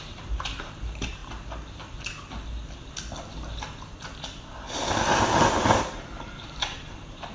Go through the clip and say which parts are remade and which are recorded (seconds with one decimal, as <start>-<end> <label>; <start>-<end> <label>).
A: 0.0-1.2 remade; 1.2-5.6 recorded; 5.6-7.3 remade

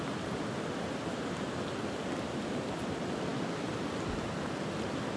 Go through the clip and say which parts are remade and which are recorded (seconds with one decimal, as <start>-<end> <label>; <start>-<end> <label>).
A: 0.0-5.2 recorded

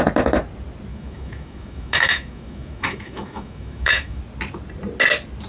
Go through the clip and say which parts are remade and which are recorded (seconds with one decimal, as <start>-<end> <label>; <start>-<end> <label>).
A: 0.0-0.9 recorded; 0.9-4.2 remade; 4.2-5.5 recorded

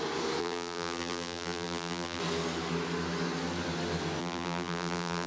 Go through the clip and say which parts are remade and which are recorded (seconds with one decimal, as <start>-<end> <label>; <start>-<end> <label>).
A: 0.0-0.4 recorded; 0.4-2.2 remade; 2.2-4.2 recorded; 4.2-5.3 remade

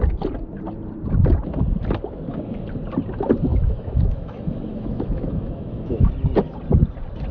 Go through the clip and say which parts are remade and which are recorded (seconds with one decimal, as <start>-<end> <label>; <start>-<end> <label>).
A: 0.0-3.5 recorded; 3.5-6.1 remade; 6.1-7.3 recorded

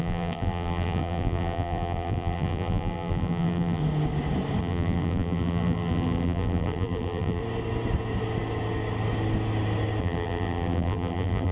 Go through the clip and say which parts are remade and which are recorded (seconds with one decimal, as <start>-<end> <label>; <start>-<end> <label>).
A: 0.0-3.8 remade; 3.8-4.6 recorded; 4.6-7.4 remade; 7.4-10.0 recorded; 10.0-11.5 remade